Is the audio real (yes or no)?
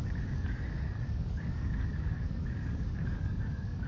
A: no